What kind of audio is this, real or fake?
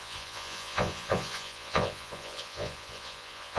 fake